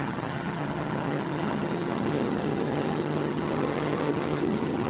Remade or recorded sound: remade